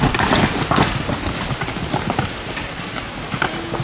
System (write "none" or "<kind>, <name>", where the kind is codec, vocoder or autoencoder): none